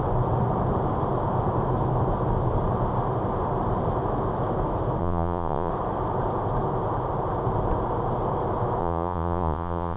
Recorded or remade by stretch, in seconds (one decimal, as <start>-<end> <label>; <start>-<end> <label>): 0.0-5.0 recorded; 5.0-5.7 remade; 5.7-8.8 recorded; 8.8-10.0 remade